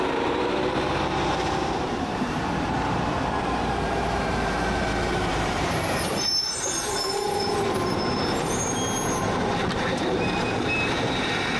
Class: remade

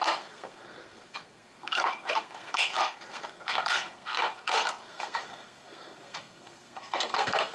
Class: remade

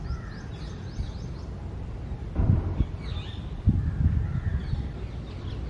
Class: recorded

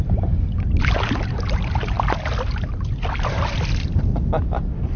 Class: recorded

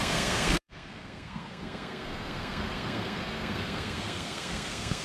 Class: remade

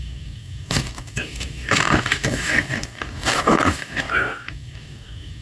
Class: remade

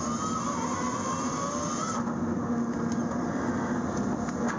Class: recorded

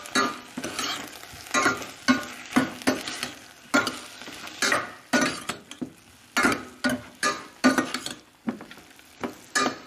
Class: recorded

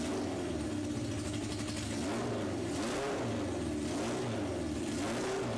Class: recorded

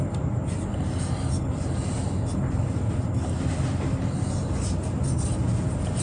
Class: recorded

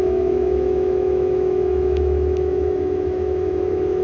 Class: remade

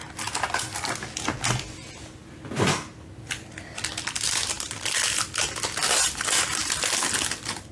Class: recorded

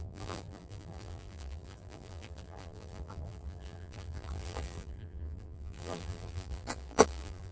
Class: remade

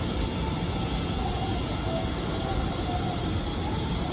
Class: recorded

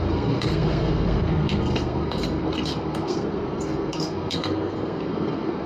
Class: remade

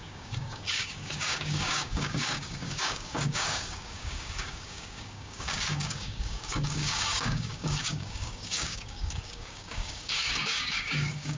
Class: remade